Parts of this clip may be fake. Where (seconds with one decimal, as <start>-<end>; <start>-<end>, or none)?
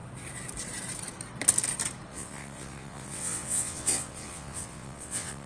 2.1-5.5